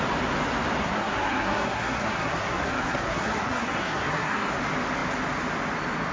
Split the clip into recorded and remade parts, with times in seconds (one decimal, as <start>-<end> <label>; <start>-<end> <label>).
0.0-0.8 recorded; 0.8-4.5 remade; 4.5-6.1 recorded